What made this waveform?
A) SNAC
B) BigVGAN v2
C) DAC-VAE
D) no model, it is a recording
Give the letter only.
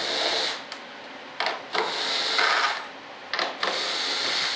D